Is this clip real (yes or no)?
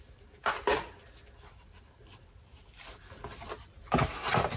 yes